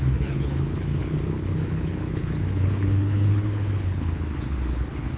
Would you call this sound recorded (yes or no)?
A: no